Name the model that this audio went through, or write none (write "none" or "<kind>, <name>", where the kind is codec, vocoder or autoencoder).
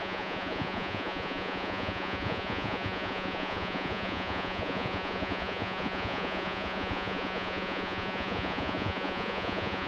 vocoder, Vocos